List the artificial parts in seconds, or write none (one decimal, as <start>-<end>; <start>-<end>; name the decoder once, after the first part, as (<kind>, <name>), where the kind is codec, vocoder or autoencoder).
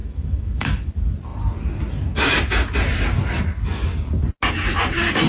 0.0-0.9 (codec, DAC)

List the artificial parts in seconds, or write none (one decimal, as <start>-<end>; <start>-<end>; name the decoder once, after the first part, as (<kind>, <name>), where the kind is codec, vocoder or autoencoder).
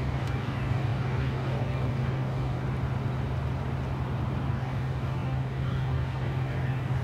0.0-2.6 (codec, DAC); 4.5-7.0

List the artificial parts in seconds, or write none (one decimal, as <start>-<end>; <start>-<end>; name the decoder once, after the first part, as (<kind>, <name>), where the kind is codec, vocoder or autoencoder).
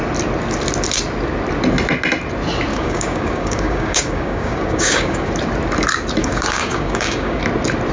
2.7-5.3 (codec, DAC); 6.2-7.4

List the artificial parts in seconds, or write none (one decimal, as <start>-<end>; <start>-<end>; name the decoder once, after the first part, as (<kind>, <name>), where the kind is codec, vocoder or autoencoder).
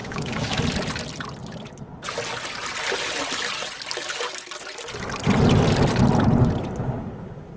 0.0-0.6 (codec, DAC)